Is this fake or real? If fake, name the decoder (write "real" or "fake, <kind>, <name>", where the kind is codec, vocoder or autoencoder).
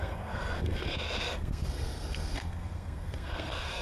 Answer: fake, codec, SNAC